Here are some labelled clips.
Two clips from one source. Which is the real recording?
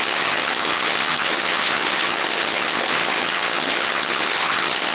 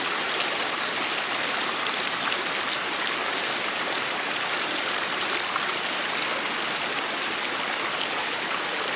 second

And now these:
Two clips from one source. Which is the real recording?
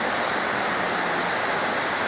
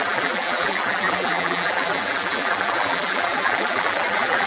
first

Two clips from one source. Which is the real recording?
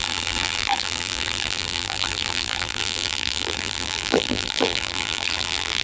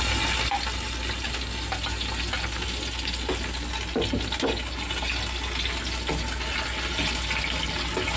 second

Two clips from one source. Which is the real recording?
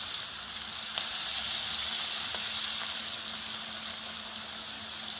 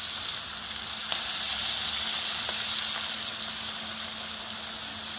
second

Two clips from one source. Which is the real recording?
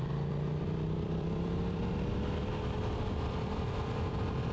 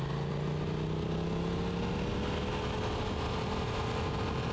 second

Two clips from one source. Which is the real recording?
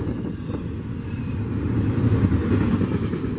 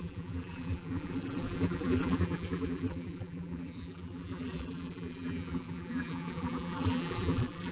first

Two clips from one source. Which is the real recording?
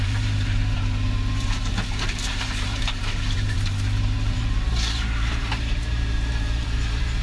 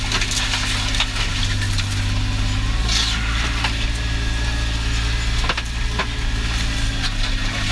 second